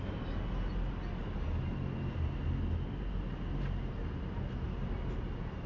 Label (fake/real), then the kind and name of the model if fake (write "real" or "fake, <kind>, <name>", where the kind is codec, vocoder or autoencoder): real